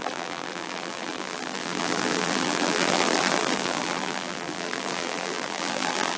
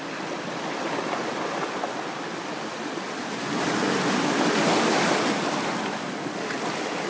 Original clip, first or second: second